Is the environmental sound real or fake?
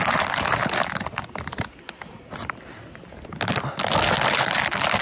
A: real